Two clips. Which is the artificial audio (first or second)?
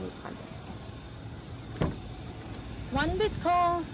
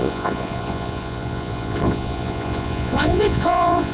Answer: second